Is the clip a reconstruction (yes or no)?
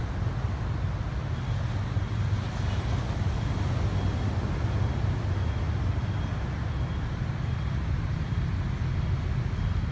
no